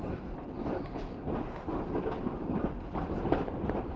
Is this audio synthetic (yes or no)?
no